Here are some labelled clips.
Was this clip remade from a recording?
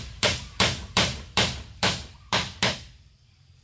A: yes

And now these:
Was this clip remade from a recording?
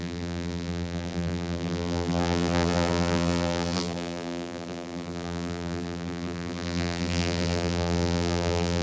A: yes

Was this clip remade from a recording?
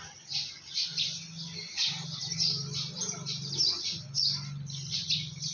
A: no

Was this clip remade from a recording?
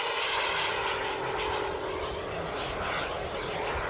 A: no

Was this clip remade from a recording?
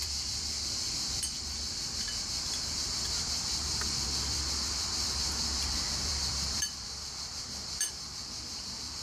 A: yes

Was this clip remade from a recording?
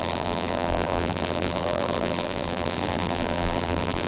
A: yes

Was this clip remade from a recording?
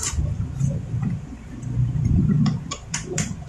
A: yes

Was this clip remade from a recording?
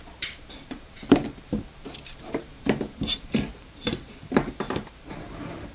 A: yes